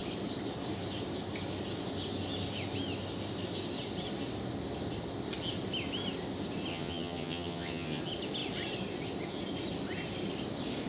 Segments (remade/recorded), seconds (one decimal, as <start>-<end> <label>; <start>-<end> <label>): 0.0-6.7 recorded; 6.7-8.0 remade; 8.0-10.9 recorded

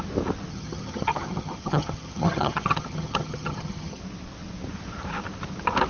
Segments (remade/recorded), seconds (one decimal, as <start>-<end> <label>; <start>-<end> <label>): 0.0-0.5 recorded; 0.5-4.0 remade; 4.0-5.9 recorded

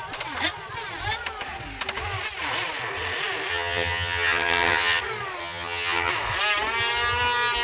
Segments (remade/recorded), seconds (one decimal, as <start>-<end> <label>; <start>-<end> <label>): 0.0-3.5 recorded; 3.5-5.0 remade; 5.0-5.4 recorded; 5.4-6.1 remade; 6.1-7.6 recorded